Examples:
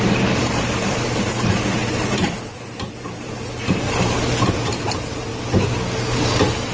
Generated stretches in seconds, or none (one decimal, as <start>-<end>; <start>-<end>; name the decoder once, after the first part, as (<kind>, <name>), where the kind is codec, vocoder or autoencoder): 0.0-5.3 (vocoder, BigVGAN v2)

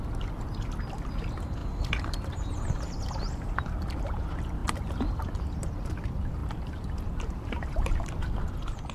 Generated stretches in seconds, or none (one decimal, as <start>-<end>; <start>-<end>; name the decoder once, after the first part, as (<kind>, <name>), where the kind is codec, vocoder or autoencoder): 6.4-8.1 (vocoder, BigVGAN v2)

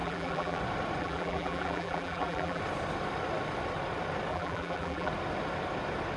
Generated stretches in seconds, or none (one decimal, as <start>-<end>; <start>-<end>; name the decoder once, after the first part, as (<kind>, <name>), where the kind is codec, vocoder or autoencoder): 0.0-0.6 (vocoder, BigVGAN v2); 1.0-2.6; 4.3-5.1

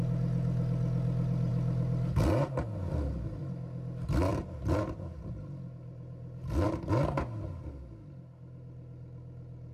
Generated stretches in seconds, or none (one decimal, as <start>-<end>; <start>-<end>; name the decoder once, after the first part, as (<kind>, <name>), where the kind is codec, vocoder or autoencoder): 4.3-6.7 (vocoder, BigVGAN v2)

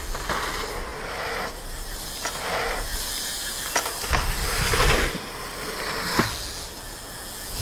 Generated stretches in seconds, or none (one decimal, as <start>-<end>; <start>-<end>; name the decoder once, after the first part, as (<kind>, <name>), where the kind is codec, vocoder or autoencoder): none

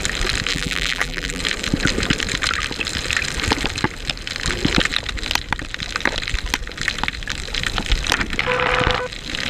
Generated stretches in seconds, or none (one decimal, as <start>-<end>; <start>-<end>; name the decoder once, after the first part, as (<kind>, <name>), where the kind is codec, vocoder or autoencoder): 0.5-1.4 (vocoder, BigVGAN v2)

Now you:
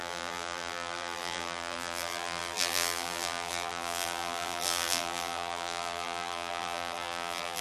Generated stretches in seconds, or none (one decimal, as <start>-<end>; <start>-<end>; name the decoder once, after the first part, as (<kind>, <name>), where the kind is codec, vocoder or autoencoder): 0.0-7.6 (vocoder, BigVGAN v2)

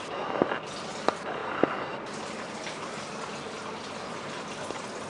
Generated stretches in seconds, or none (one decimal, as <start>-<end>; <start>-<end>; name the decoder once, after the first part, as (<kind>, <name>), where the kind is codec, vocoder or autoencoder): none